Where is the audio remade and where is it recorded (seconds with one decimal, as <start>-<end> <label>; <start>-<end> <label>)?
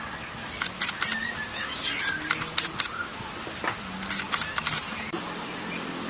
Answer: 0.0-6.1 recorded